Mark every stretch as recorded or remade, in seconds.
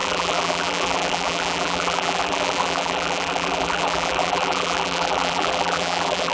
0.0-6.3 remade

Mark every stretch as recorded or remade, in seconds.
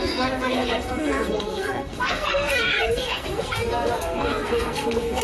0.0-5.2 remade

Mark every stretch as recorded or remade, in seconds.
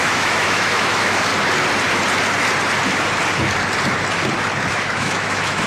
0.0-1.3 remade; 1.3-4.7 recorded; 4.7-5.7 remade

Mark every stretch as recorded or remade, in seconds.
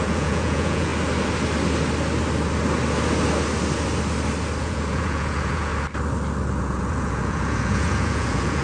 0.0-0.9 remade; 0.9-4.6 recorded; 4.6-5.7 remade; 5.7-6.6 recorded; 6.6-8.6 remade